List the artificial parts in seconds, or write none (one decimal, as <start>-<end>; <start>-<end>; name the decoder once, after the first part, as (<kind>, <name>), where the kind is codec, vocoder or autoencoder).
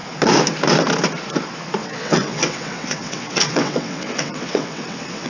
1.8-5.3 (vocoder, WaveNeXt)